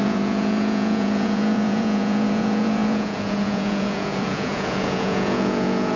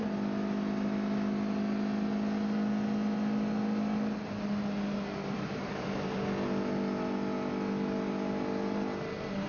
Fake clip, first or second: first